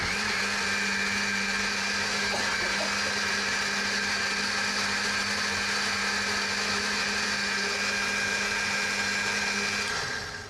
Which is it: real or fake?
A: real